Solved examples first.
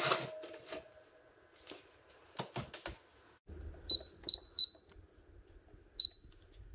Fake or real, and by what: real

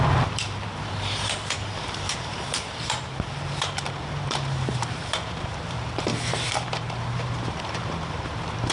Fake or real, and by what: fake, vocoder, BigVGAN v2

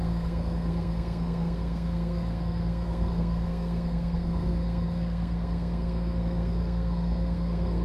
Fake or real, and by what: fake, codec, SNAC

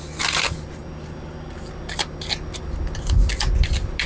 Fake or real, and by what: real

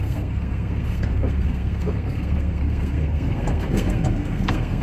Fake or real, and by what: fake, codec, SNAC